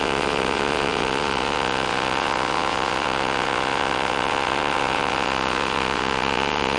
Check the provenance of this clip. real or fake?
fake